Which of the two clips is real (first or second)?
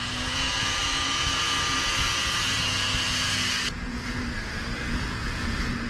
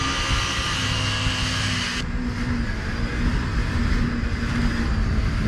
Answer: second